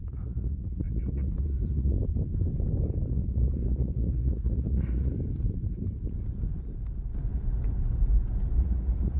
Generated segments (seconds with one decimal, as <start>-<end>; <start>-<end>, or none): 0.0-2.0; 3.1-5.1; 8.6-9.2